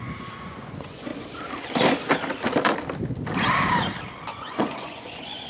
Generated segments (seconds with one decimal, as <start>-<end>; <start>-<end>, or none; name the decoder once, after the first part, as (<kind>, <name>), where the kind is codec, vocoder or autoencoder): 0.0-1.1 (vocoder, Vocos); 4.4-5.5